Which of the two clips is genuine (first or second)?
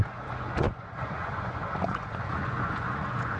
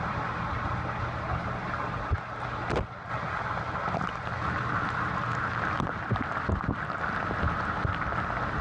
second